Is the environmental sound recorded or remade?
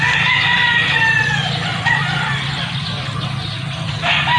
recorded